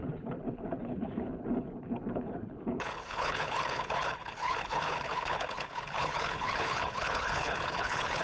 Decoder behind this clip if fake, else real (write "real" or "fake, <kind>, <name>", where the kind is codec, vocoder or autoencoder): fake, codec, HILCodec